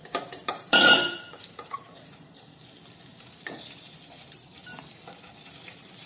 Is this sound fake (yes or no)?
yes